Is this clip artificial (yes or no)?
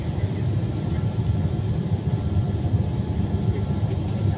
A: no